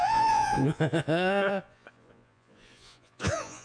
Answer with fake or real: fake